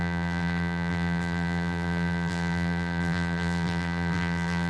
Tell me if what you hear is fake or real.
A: fake